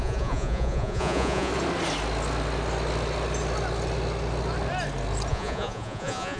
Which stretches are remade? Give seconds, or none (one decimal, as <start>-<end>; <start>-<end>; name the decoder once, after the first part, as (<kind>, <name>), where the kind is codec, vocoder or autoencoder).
0.0-1.5 (vocoder, Vocos); 5.3-6.4